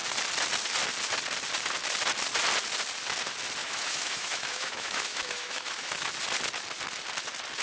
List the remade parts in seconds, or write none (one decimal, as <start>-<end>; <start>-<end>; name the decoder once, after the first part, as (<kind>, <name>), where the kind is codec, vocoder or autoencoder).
3.6-6.1 (autoencoder, DAC-VAE)